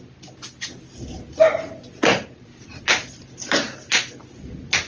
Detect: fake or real real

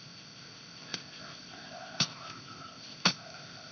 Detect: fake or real fake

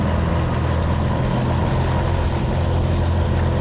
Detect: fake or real real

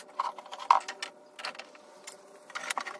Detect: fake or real real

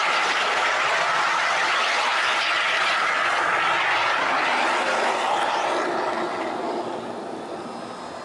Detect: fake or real real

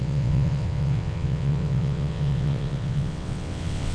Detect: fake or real fake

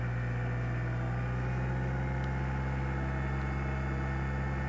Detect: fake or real real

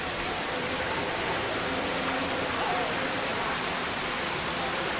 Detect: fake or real real